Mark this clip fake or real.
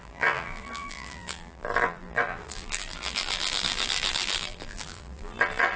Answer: fake